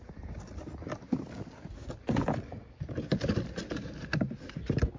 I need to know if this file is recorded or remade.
recorded